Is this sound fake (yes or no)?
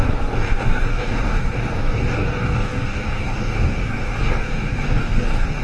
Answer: yes